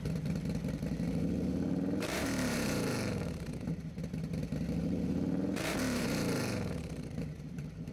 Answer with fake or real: fake